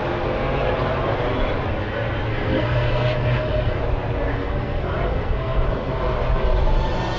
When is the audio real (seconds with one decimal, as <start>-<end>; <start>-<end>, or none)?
0.0-2.3; 3.8-4.3; 6.0-7.2

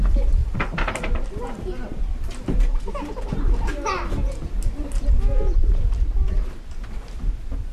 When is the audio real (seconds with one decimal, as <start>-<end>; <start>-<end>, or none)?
0.0-0.4; 3.6-7.7

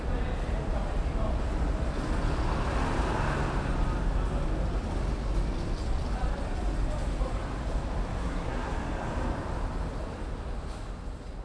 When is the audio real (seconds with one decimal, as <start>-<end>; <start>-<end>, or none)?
0.0-8.2; 8.7-11.4